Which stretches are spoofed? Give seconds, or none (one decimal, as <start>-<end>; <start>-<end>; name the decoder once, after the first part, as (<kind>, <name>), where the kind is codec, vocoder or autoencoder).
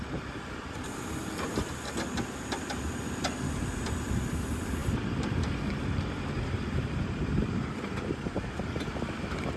4.8-8.1 (vocoder, BigVGAN v2)